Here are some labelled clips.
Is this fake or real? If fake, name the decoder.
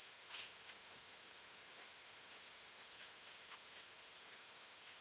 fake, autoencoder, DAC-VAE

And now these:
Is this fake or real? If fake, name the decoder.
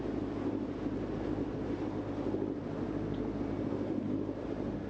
real